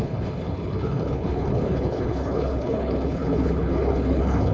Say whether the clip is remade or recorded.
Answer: remade